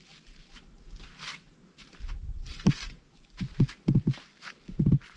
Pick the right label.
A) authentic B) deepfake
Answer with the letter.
B